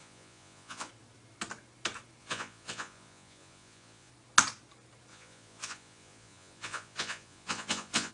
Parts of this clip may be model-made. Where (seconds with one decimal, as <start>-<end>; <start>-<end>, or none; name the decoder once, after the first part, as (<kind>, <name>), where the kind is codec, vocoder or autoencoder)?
0.0-0.9 (vocoder, Vocos); 2.2-4.1; 5.1-8.1